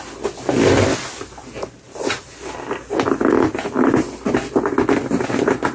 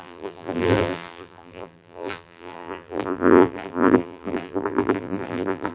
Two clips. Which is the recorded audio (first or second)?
first